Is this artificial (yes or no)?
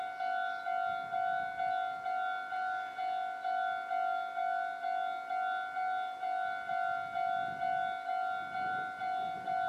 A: no